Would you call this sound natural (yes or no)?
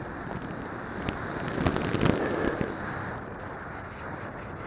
yes